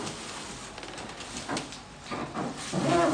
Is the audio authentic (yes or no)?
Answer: yes